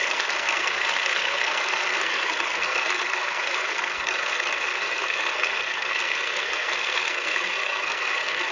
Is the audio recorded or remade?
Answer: remade